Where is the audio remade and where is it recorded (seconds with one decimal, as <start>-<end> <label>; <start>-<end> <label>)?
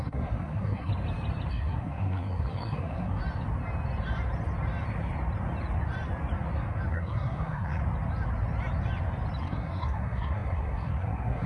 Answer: 0.0-0.9 remade; 0.9-1.5 recorded; 1.5-3.2 remade; 3.2-6.9 recorded; 6.9-7.8 remade; 7.8-9.4 recorded; 9.4-11.5 remade